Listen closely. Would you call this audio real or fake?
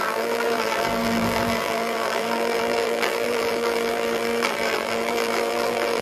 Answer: fake